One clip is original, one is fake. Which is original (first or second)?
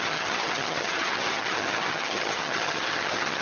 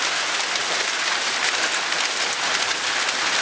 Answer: second